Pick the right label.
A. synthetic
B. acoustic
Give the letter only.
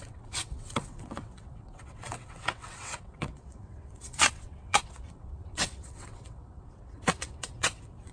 A